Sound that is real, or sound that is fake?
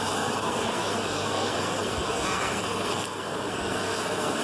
fake